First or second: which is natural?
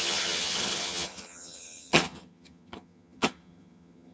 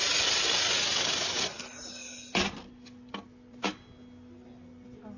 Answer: second